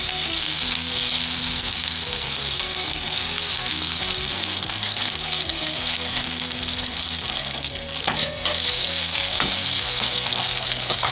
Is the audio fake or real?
fake